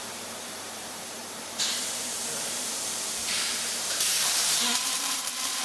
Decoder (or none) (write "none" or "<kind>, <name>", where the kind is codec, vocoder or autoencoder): vocoder, BigVGAN v2